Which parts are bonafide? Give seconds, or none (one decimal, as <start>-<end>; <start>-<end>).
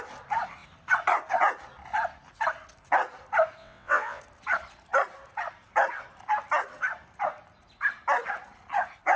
0.0-3.6; 4.2-9.2